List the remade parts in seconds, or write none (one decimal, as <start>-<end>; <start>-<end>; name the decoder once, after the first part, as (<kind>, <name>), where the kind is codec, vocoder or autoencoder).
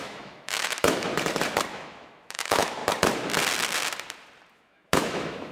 0.0-1.1 (autoencoder, DAC-VAE); 1.7-2.8; 4.5-5.5